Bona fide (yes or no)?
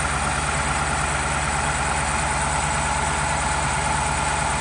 yes